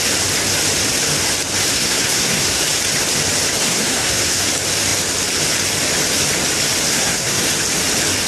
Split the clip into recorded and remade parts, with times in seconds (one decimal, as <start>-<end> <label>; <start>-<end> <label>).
0.0-1.7 recorded; 1.7-2.6 remade; 2.6-3.6 recorded; 3.6-4.4 remade; 4.4-6.9 recorded; 6.9-7.5 remade; 7.5-8.3 recorded

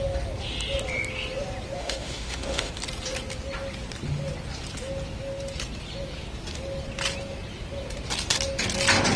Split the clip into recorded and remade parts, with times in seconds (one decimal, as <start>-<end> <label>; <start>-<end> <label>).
0.0-1.8 recorded; 1.8-2.7 remade; 2.7-9.2 recorded

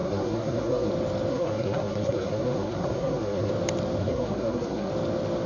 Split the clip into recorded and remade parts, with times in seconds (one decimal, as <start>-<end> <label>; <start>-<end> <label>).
0.0-0.9 remade; 0.9-1.3 recorded; 1.3-3.5 remade; 3.5-4.0 recorded; 4.0-4.9 remade; 4.9-5.5 recorded

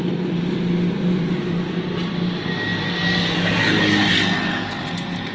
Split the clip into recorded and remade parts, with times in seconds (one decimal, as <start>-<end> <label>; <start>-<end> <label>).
0.0-5.3 recorded

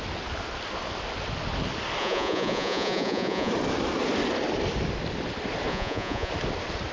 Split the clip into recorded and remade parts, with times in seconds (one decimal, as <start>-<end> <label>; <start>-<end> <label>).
0.0-2.0 recorded; 2.0-3.5 remade; 3.5-5.7 recorded; 5.7-6.3 remade; 6.3-6.9 recorded

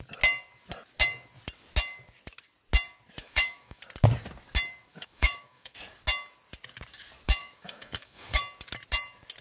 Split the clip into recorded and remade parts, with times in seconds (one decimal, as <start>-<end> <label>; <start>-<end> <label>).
0.0-3.2 recorded; 3.2-3.8 remade; 3.8-4.9 recorded; 4.9-5.8 remade; 5.8-7.4 recorded; 7.4-8.4 remade; 8.4-9.4 recorded

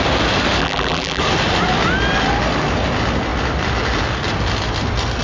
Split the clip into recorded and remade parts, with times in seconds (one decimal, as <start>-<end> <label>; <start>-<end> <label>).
0.0-0.6 recorded; 0.6-1.2 remade; 1.2-5.2 recorded

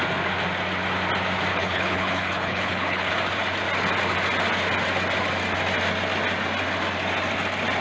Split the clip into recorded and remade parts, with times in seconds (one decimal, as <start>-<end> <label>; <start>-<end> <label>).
0.0-1.5 recorded; 1.5-3.1 remade; 3.1-7.8 recorded